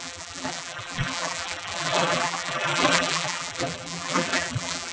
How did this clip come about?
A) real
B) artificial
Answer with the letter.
B